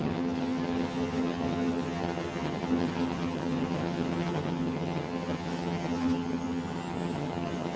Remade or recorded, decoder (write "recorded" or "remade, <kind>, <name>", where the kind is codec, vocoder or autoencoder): remade, vocoder, HiFi-GAN